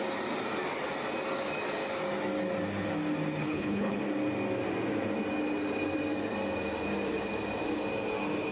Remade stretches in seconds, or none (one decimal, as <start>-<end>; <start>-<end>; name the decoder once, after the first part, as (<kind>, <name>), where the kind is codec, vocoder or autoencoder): 3.4-4.0 (codec, HILCodec)